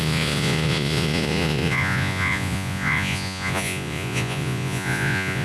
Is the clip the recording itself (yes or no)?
no